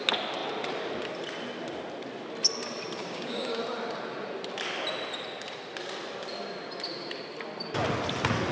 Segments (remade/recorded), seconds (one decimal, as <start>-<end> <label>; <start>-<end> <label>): 0.0-3.0 recorded; 3.0-3.6 remade; 3.6-8.5 recorded